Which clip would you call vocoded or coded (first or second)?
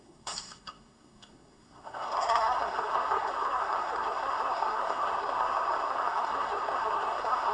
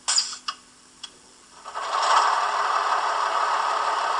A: first